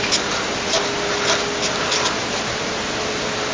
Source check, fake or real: real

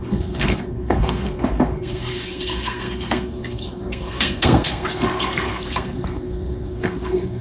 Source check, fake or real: fake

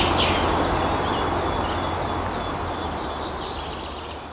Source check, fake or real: real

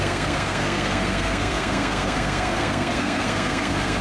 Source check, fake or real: fake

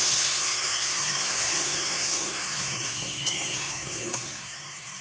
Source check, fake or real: fake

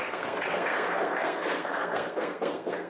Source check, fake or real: fake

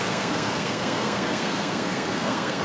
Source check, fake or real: fake